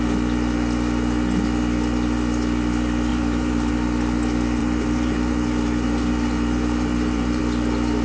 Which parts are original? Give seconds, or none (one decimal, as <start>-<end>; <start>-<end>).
0.0-3.1; 3.7-4.6; 7.4-8.0